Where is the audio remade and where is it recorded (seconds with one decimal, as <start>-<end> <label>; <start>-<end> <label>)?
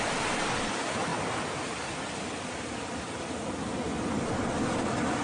0.0-5.2 recorded